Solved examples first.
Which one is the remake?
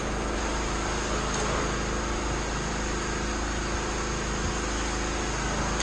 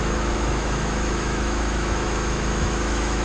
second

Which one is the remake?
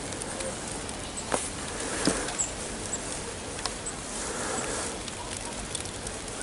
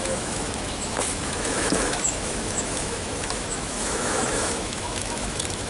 second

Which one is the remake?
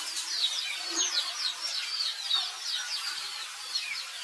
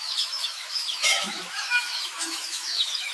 second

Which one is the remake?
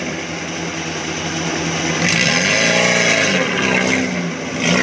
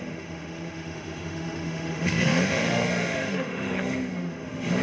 second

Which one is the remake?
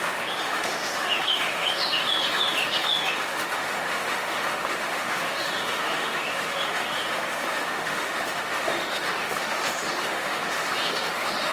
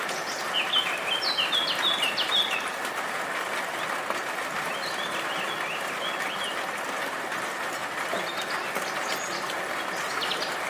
first